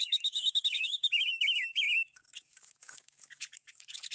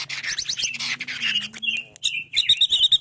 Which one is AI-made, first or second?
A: first